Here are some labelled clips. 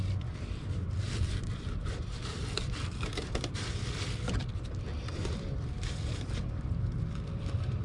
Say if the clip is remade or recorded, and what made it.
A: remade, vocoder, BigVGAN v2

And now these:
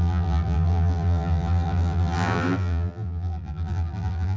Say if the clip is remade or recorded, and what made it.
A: remade, vocoder, BigVGAN v2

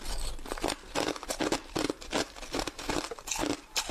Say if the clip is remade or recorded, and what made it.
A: recorded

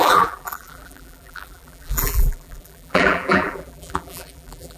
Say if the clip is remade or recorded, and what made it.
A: remade, vocoder, BigVGAN v2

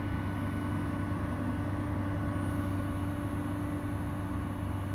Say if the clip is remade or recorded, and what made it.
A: recorded